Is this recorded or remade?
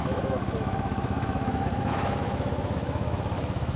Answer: remade